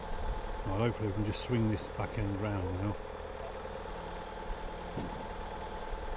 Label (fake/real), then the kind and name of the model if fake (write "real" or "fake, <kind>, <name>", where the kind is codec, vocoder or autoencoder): real